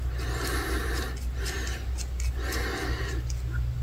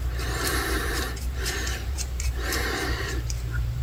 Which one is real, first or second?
first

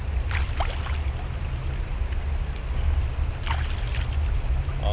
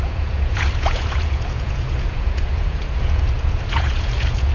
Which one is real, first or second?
first